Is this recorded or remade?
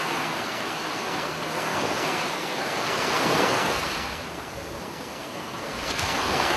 remade